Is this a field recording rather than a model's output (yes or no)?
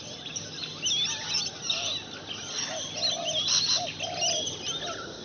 yes